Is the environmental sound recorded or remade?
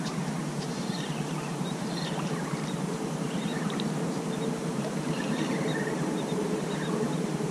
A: remade